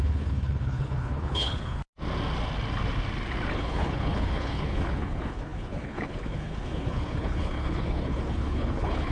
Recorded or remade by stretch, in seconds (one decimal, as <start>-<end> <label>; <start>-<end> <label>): 0.0-1.8 remade; 1.8-3.5 recorded; 3.5-9.1 remade